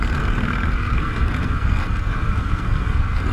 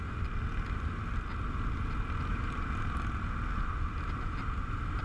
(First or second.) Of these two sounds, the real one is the second